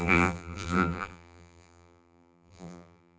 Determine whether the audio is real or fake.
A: fake